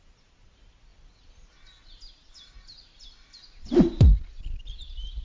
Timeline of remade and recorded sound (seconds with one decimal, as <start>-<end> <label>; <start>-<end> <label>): 0.0-5.2 recorded